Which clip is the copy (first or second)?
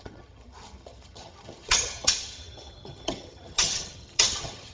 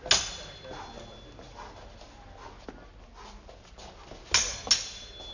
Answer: first